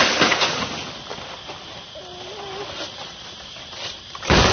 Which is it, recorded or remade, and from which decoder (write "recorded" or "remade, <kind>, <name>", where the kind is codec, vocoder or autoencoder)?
recorded